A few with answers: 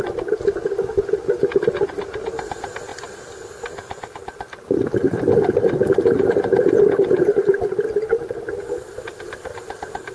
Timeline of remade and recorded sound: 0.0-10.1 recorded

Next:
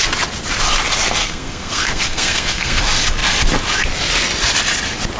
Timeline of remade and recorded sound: 0.0-1.2 recorded; 1.2-2.8 remade; 2.8-5.2 recorded

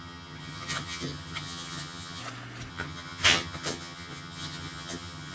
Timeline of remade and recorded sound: 0.0-2.2 remade; 2.2-2.7 recorded; 2.7-5.3 remade

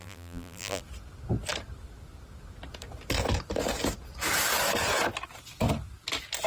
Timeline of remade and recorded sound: 0.0-0.8 remade; 0.8-6.5 recorded